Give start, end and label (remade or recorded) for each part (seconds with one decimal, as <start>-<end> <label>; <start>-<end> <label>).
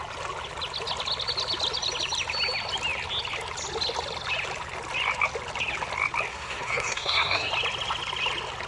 0.0-6.3 recorded; 6.3-7.5 remade; 7.5-8.7 recorded